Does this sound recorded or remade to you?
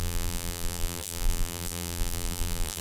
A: remade